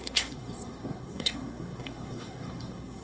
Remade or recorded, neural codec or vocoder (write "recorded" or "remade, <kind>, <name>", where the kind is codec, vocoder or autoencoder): remade, codec, SNAC